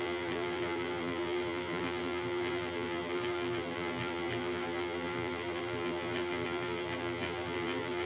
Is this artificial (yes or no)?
yes